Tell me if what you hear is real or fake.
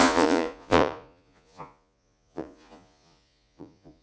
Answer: fake